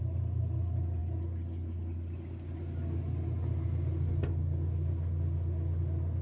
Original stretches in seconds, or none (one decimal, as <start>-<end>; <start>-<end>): 0.0-6.2